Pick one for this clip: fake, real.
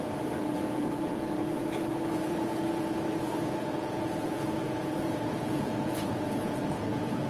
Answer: fake